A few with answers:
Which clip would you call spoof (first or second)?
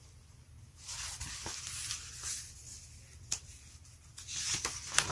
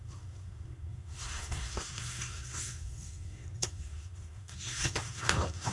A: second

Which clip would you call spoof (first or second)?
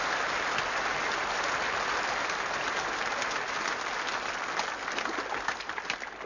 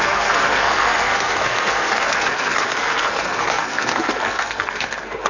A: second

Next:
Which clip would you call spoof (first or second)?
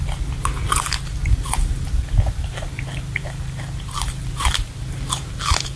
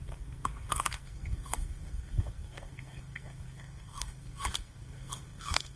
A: second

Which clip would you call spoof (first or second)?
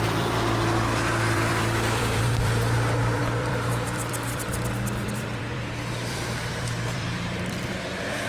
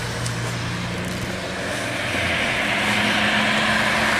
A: first